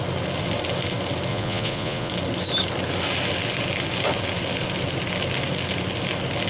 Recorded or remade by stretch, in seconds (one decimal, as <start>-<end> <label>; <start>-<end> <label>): 0.0-1.3 recorded; 1.3-2.1 remade; 2.1-6.5 recorded

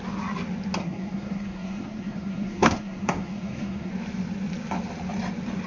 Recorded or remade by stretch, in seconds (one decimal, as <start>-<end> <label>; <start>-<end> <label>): 0.0-0.8 recorded; 0.8-3.9 remade; 3.9-5.7 recorded

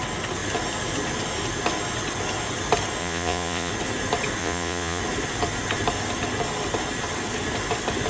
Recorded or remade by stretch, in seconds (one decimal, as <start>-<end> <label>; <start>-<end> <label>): 0.0-3.0 recorded; 3.0-3.7 remade; 3.7-4.4 recorded; 4.4-5.0 remade; 5.0-8.1 recorded

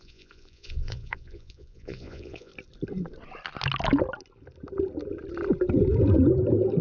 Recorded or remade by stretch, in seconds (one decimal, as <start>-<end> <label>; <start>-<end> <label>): 0.0-2.5 remade; 2.5-6.8 recorded